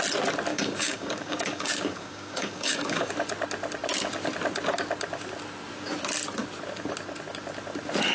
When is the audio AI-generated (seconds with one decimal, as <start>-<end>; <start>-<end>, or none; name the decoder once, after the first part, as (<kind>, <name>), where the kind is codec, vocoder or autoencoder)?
0.5-3.1 (codec, DAC)